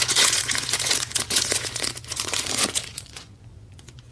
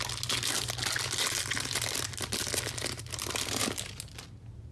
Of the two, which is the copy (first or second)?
first